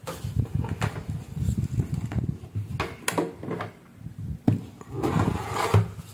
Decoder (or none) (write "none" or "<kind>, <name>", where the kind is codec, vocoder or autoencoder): none